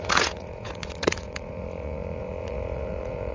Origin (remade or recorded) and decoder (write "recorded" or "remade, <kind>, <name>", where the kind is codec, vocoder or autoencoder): remade, vocoder, Vocos